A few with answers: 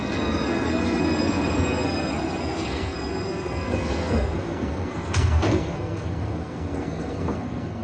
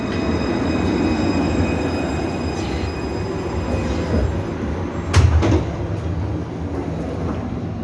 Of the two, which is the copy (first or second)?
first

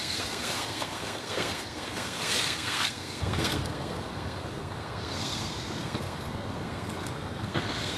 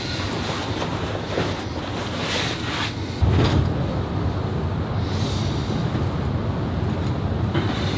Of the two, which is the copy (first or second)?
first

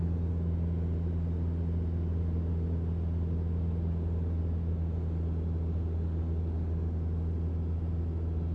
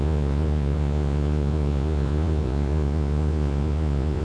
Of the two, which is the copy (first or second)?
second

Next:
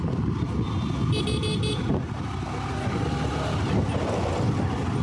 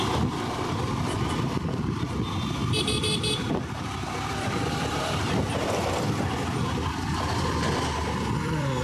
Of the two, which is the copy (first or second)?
second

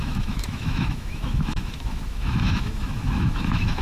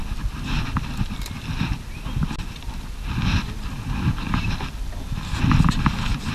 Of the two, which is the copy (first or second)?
first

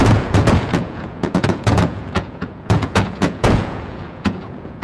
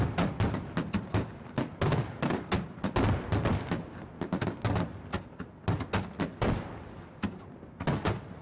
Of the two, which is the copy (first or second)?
first